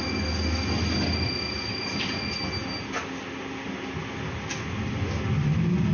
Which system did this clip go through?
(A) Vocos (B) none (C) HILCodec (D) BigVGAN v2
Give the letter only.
B